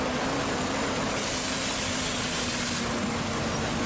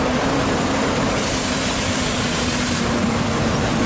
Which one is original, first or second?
first